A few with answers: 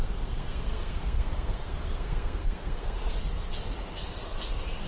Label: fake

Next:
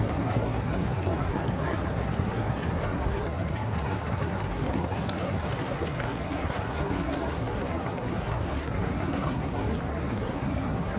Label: fake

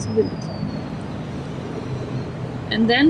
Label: real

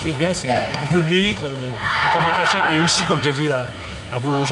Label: fake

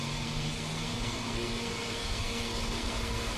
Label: fake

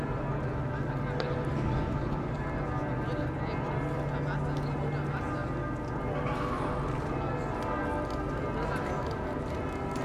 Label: real